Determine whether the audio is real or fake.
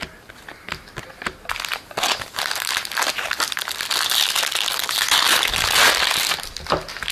real